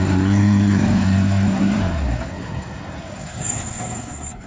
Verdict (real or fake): fake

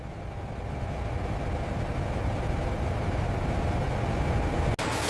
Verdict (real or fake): real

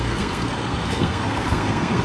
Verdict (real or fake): fake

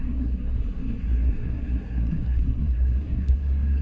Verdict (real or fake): fake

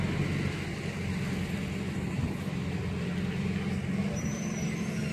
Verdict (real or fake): real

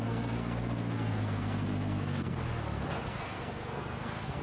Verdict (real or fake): fake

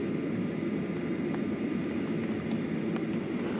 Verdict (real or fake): real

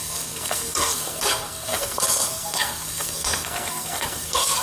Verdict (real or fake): fake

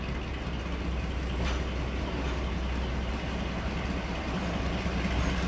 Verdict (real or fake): real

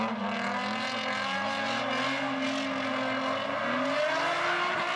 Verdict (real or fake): real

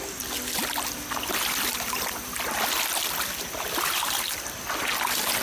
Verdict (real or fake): real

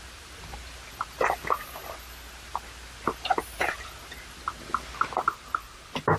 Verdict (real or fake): real